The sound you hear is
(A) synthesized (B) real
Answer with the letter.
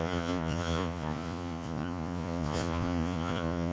A